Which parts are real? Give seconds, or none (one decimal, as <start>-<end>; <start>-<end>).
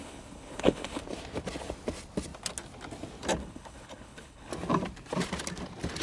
1.0-3.4; 4.5-6.0